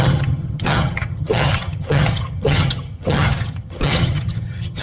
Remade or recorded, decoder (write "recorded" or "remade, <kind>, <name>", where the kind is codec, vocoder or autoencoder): remade, vocoder, HiFi-GAN